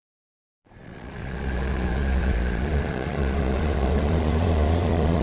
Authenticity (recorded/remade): remade